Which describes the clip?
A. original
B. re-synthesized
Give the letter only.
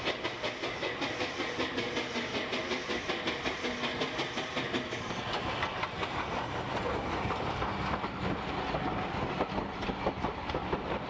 A